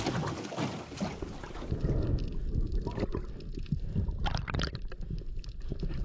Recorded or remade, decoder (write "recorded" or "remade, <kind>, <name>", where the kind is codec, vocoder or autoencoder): recorded